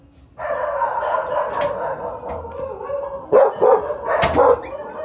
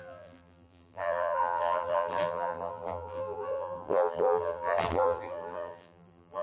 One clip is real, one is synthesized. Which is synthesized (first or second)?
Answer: second